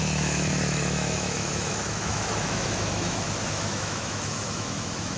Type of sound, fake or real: fake